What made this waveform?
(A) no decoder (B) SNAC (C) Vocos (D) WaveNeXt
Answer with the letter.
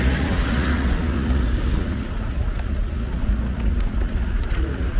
C